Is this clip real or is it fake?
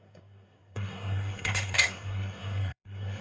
fake